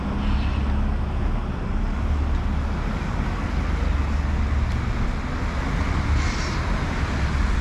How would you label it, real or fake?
real